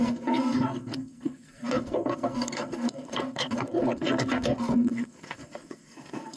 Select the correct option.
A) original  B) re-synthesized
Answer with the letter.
B